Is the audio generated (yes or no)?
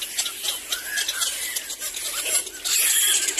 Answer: no